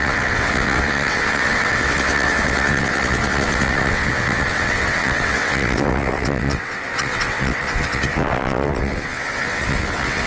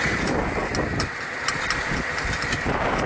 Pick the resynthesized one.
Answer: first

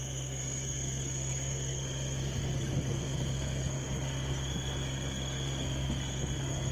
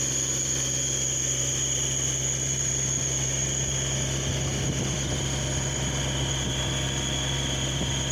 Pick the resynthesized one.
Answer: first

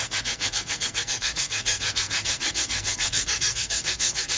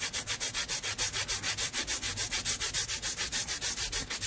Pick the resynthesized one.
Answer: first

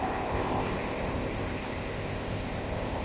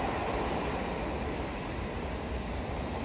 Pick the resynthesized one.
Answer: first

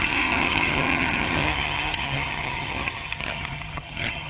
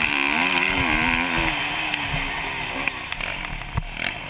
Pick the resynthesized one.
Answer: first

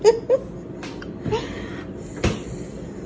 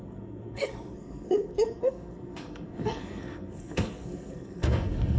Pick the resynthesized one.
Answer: second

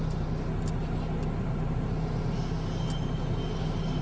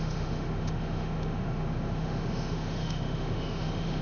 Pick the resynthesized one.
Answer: second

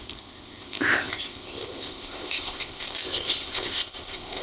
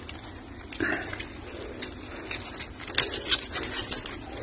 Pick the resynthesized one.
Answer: first